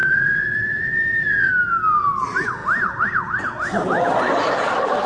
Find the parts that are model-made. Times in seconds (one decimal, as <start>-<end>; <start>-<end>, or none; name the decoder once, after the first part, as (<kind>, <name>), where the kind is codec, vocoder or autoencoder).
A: 0.0-1.5 (vocoder, WaveNeXt)

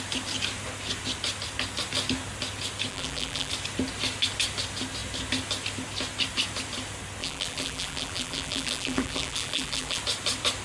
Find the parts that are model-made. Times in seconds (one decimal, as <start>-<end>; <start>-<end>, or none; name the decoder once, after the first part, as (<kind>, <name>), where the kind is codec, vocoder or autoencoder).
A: 2.9-3.5 (vocoder, BigVGAN v2); 7.2-10.0

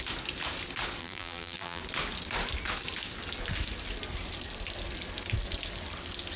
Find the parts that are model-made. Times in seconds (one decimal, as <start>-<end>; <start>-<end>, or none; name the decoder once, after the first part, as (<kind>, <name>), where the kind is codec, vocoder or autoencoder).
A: 1.0-1.8 (vocoder, BigVGAN v2)